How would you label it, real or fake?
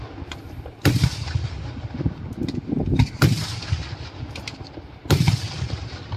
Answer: real